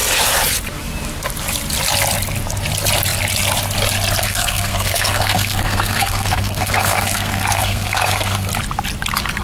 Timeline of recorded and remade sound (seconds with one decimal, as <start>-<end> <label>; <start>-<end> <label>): 0.0-4.2 recorded; 4.2-8.5 remade; 8.5-9.4 recorded